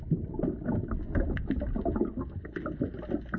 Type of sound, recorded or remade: recorded